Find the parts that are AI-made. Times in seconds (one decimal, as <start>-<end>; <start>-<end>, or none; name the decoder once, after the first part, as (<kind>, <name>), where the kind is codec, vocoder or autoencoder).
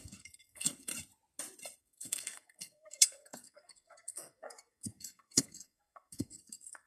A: 0.0-0.9 (codec, SNAC); 1.8-6.9